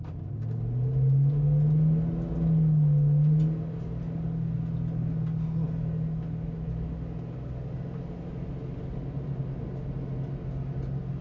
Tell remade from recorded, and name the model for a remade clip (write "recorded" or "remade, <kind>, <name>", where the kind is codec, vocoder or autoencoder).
recorded